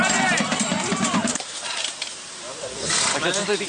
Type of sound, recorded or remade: remade